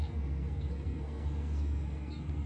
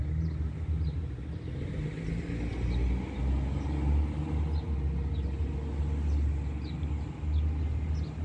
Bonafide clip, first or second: second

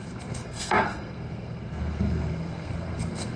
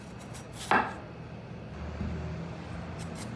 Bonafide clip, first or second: second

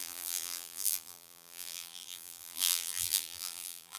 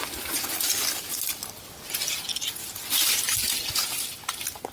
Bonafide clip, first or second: second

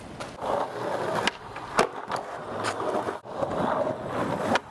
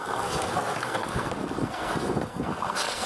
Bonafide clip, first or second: first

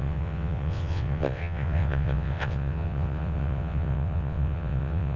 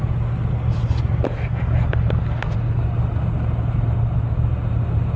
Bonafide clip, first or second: second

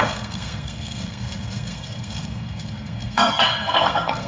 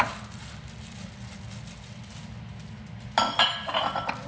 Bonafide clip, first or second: second